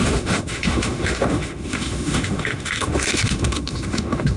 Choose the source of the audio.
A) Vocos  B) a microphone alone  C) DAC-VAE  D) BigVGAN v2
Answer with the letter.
C